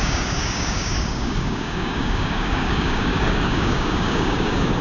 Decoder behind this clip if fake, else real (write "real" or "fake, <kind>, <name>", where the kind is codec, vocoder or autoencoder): fake, codec, DAC